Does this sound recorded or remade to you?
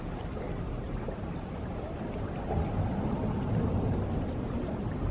recorded